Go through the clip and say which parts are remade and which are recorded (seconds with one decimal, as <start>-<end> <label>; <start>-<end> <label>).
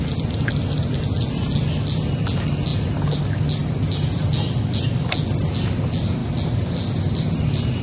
0.0-7.8 recorded